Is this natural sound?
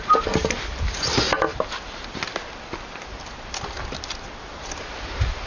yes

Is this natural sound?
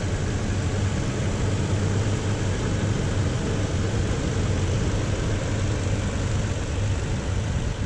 yes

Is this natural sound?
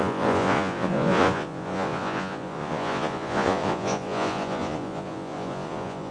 no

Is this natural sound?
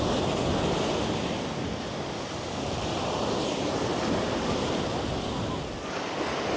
yes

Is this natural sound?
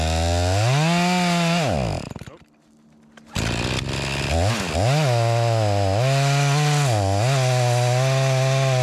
yes